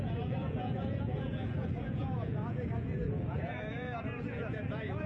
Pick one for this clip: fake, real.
fake